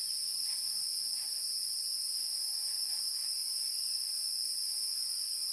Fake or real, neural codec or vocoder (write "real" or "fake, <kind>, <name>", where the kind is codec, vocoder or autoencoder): real